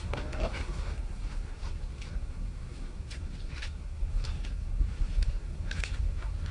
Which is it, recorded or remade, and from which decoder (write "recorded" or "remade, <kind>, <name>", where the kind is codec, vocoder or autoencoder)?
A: remade, codec, SNAC